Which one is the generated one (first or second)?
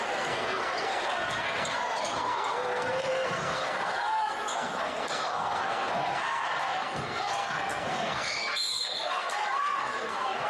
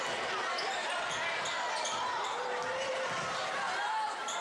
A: first